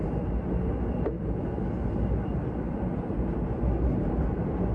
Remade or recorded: recorded